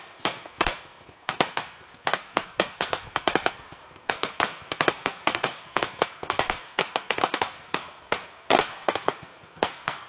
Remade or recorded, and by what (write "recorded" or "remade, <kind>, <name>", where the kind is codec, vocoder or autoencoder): remade, codec, SNAC